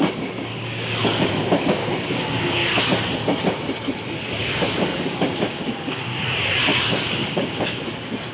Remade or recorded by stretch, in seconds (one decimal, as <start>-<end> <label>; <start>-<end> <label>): 0.0-0.5 recorded; 0.5-1.3 remade; 1.3-1.8 recorded; 1.8-2.8 remade; 2.8-4.4 recorded; 4.4-6.2 remade; 6.2-6.7 recorded; 6.7-7.8 remade; 7.8-8.3 recorded